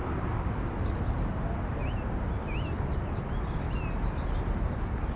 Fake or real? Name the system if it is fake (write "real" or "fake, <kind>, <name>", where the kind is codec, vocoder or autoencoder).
real